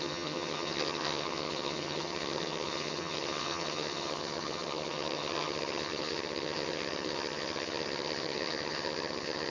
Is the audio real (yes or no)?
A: no